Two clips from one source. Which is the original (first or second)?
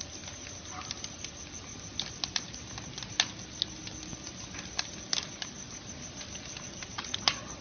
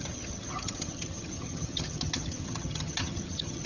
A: first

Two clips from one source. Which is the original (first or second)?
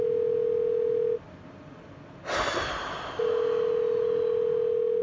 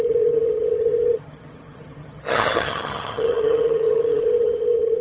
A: first